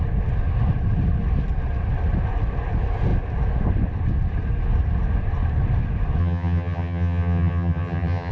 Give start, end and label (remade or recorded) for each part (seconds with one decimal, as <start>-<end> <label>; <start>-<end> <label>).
0.0-6.2 recorded; 6.2-8.3 remade